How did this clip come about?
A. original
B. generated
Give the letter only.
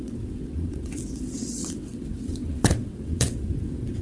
B